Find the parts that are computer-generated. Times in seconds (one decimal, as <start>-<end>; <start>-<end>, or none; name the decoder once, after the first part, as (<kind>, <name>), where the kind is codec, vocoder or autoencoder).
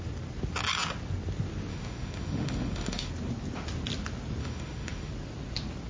1.7-3.1 (autoencoder, DAC-VAE); 4.4-5.1